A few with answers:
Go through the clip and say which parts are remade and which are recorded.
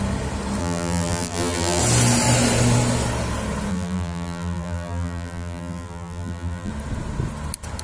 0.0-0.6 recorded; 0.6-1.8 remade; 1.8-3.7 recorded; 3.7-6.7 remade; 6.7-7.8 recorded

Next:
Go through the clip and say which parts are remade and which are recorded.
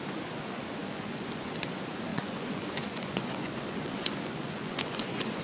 0.0-0.8 recorded; 0.8-1.5 remade; 1.5-2.1 recorded; 2.1-5.4 remade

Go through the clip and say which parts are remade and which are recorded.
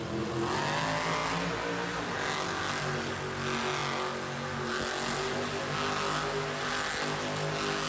0.0-7.9 recorded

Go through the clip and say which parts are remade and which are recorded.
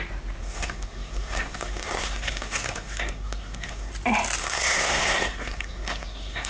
0.0-0.4 recorded; 0.4-3.9 remade; 3.9-4.4 recorded; 4.4-6.5 remade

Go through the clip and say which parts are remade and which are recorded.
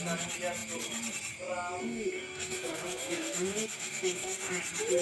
0.0-1.8 recorded; 1.8-4.6 remade; 4.6-5.0 recorded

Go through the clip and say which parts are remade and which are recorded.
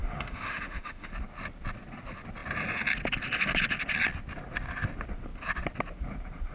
0.0-1.1 remade; 1.1-6.5 recorded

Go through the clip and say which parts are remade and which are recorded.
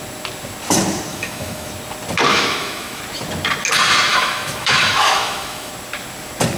0.0-1.1 recorded; 1.1-1.7 remade; 1.7-2.3 recorded; 2.3-3.0 remade; 3.0-4.1 recorded; 4.1-5.7 remade; 5.7-6.6 recorded